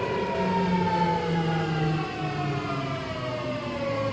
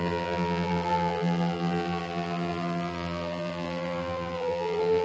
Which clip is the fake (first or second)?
second